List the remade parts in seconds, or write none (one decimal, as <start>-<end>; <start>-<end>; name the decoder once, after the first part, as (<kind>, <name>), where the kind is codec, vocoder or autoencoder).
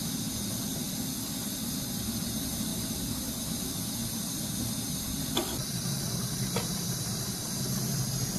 2.7-7.5 (vocoder, BigVGAN v2)